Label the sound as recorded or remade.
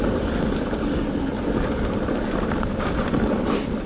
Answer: recorded